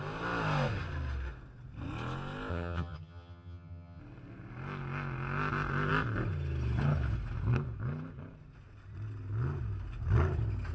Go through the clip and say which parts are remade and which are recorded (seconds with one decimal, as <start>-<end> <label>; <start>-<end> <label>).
0.0-2.5 recorded; 2.5-4.0 remade; 4.0-10.7 recorded